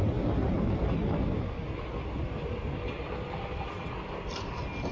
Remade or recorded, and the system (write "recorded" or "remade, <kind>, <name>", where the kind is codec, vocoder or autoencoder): recorded